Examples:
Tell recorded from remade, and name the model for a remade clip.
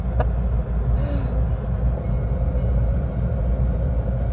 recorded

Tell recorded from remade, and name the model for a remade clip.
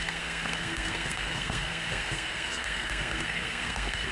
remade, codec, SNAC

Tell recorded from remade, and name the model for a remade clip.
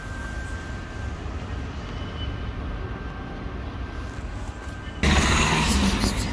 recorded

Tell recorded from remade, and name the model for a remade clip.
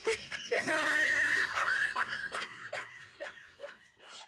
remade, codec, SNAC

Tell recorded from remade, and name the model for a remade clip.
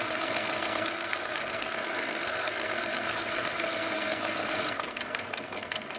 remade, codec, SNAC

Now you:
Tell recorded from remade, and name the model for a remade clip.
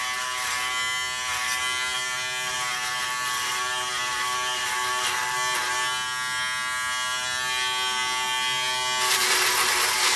recorded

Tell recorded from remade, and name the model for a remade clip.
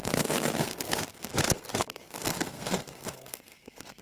remade, codec, SNAC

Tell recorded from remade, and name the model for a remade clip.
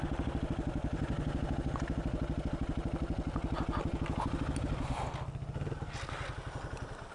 recorded